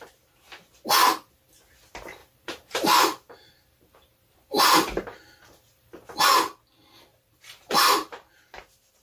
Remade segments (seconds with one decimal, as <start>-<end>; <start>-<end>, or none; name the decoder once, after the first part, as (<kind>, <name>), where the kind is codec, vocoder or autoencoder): 2.2-5.9 (vocoder, BigVGAN v2); 7.1-8.6